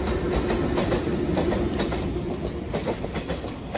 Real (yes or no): yes